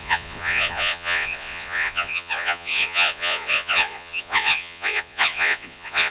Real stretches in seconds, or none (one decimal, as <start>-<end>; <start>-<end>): none